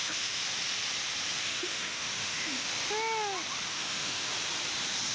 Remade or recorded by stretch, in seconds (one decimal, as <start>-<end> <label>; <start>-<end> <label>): 0.0-0.4 remade; 0.4-1.4 recorded; 1.4-2.7 remade; 2.7-3.7 recorded; 3.7-4.3 remade; 4.3-5.1 recorded